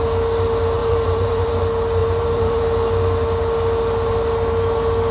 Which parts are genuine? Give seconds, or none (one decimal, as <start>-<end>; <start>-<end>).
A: 0.0-0.8; 1.6-2.0; 2.6-5.1